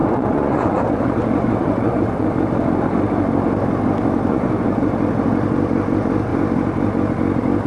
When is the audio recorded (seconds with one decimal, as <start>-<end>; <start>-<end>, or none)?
2.3-4.3; 4.9-7.7